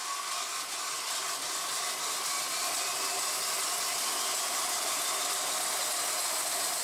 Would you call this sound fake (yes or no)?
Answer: no